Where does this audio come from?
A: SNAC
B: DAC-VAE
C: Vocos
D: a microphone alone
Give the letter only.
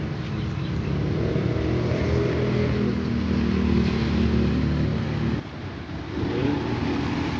D